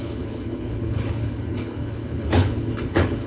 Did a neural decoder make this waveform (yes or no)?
yes